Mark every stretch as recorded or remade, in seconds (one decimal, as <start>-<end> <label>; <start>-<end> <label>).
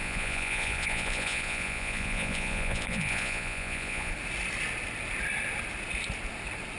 0.0-4.1 remade; 4.1-6.8 recorded